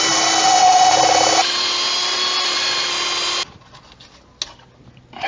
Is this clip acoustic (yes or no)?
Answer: yes